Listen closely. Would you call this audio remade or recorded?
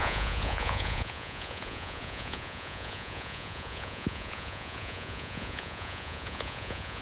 remade